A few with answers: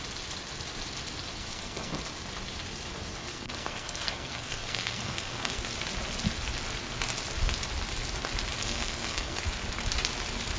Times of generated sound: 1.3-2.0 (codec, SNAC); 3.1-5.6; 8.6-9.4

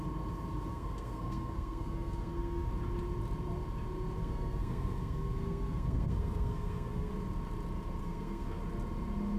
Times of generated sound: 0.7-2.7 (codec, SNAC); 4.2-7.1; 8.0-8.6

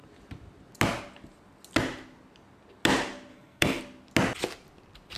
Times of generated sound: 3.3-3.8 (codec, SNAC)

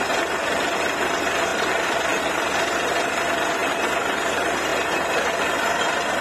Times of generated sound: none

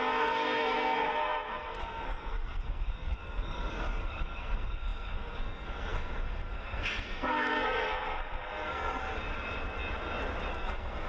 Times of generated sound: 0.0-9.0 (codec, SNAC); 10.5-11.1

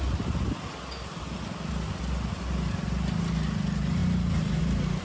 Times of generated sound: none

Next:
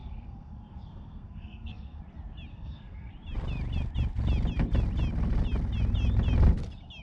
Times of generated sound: 0.0-2.0 (codec, SNAC); 2.5-3.1

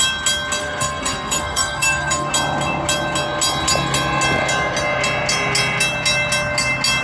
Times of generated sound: 0.6-2.3 (codec, SNAC)